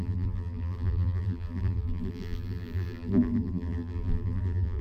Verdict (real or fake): fake